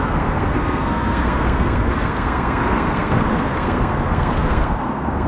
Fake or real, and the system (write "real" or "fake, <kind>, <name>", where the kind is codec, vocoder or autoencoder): fake, codec, SNAC